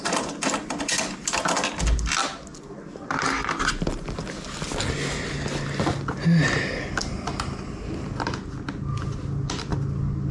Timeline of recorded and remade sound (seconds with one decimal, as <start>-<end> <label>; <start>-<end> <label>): 0.0-10.3 recorded